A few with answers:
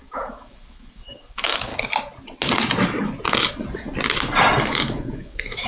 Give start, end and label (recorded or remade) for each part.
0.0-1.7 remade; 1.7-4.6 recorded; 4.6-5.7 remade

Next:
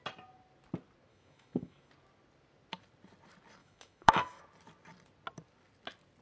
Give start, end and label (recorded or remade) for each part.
0.0-1.1 recorded; 1.1-1.9 remade; 1.9-3.6 recorded; 3.6-4.4 remade; 4.4-6.2 recorded

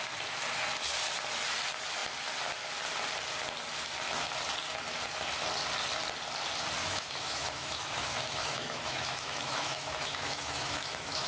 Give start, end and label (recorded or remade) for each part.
0.0-6.8 recorded; 6.8-11.3 remade

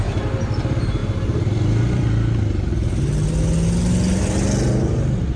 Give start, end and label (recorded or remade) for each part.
0.0-5.4 recorded

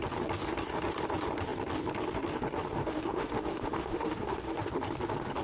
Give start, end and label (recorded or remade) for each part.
0.0-2.8 recorded; 2.8-4.7 remade; 4.7-5.4 recorded

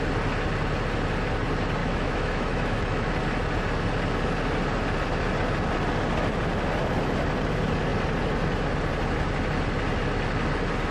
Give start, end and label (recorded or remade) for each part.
0.0-1.8 recorded; 1.8-3.1 remade; 3.1-10.9 recorded

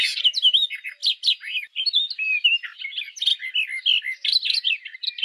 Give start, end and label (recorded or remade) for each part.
0.0-5.2 recorded

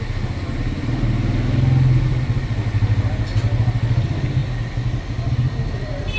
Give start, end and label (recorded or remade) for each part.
0.0-6.2 recorded